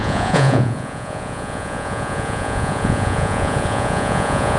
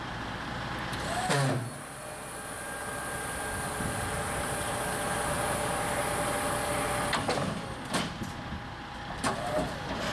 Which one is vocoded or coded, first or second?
first